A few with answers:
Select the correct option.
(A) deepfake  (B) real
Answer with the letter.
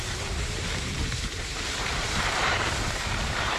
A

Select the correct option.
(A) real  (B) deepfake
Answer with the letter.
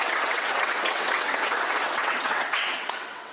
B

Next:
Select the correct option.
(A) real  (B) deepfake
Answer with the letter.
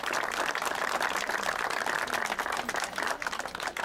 A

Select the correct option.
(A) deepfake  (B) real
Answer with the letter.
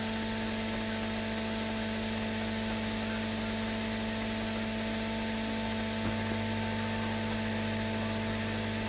B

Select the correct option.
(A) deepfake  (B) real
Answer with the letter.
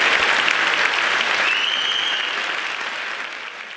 B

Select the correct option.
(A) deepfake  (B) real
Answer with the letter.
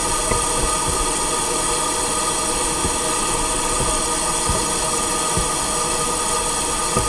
B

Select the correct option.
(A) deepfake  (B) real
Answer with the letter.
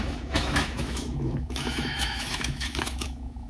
A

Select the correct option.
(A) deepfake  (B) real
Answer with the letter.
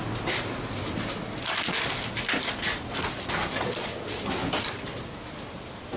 A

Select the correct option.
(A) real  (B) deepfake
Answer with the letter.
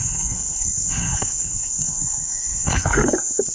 B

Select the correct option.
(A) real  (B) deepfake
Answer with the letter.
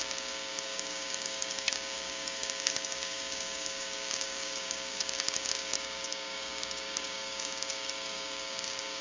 B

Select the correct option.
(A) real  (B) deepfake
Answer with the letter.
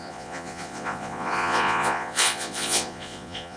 B